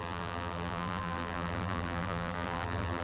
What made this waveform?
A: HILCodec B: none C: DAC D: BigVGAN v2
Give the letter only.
D